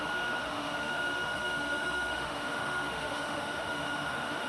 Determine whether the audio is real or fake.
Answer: fake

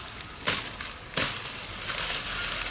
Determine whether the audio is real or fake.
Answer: real